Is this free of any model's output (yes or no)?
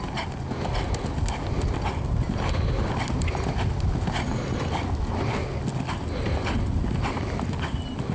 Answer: yes